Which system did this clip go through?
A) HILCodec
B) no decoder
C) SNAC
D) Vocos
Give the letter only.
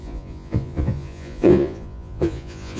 D